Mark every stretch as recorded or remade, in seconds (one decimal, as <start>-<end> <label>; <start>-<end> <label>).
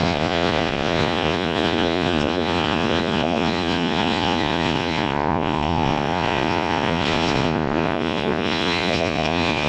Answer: 0.0-9.7 remade